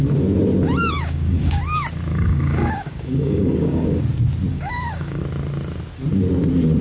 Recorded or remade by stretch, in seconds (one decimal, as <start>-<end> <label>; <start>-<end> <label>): 0.0-0.8 recorded; 0.8-1.6 remade; 1.6-2.1 recorded; 2.1-4.0 remade; 4.0-4.5 recorded; 4.5-5.2 remade; 5.2-6.8 recorded